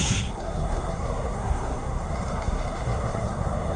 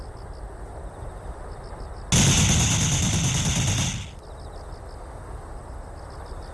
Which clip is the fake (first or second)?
first